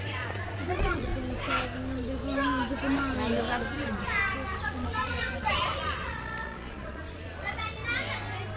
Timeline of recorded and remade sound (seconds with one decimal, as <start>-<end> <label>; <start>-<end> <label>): 0.0-1.1 remade; 1.1-4.6 recorded; 4.6-7.8 remade; 7.8-8.6 recorded